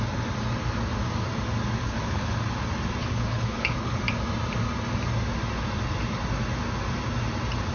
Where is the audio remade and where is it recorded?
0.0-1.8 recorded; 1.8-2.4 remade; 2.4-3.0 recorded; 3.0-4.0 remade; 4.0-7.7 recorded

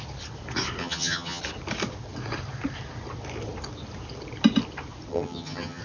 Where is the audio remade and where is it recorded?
0.0-0.8 recorded; 0.8-1.4 remade; 1.4-5.1 recorded; 5.1-5.8 remade

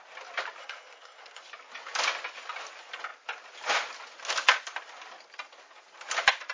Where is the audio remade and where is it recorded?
0.0-0.6 recorded; 0.6-1.4 remade; 1.4-6.5 recorded

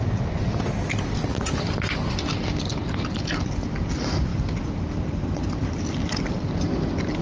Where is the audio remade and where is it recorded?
0.0-7.2 recorded